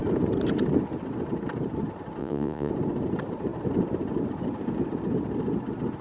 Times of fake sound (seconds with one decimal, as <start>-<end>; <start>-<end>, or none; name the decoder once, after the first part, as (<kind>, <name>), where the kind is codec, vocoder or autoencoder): 2.2-2.7 (vocoder, Vocos)